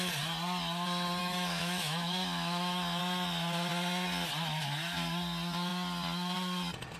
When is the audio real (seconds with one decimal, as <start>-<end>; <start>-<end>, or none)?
0.0-1.2; 3.0-7.0